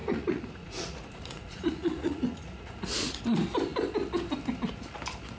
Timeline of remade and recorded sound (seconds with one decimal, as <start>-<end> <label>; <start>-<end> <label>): 0.0-3.2 remade; 3.2-5.4 recorded